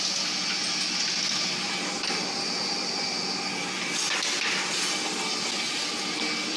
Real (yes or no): yes